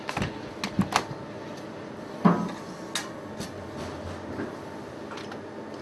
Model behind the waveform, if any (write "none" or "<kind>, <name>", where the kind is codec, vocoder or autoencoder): none